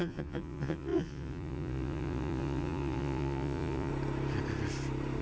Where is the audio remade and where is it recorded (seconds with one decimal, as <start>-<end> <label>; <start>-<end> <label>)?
0.0-3.9 remade; 3.9-5.2 recorded